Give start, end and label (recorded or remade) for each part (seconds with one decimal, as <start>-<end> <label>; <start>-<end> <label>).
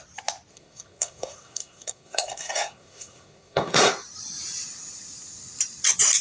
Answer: 0.0-0.5 recorded; 0.5-3.9 remade; 3.9-6.2 recorded